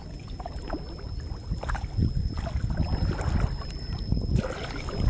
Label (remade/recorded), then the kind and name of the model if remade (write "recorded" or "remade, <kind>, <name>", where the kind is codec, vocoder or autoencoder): recorded